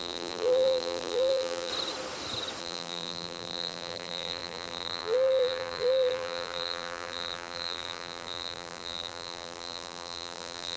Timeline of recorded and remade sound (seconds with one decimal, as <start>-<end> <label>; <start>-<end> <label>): 0.0-1.7 remade; 1.7-2.6 recorded; 2.6-10.8 remade